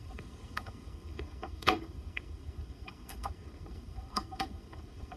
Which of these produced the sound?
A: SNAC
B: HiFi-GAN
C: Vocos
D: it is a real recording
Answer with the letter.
A